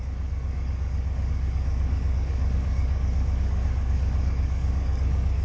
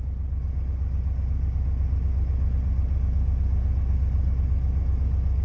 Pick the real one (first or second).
second